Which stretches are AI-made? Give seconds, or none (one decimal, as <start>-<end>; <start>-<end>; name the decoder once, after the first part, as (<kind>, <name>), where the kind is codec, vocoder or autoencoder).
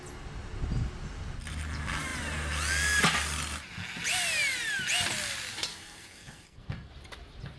5.7-6.9 (codec, SNAC)